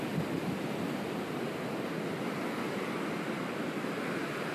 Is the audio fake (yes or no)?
no